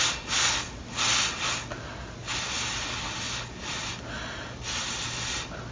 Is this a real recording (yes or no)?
yes